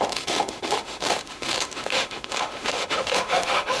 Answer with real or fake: fake